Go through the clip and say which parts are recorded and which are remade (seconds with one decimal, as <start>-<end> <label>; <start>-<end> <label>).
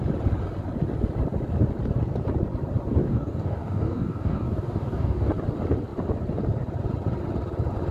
0.0-3.0 recorded; 3.0-5.3 remade; 5.3-7.9 recorded